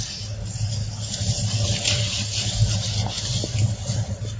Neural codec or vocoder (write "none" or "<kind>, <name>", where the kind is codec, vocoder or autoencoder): none